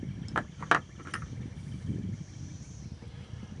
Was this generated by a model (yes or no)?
no